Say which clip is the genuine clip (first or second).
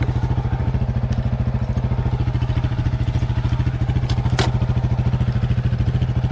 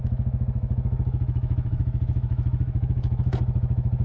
first